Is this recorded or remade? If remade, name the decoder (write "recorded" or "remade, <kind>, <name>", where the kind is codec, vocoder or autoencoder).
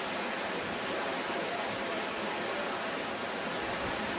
recorded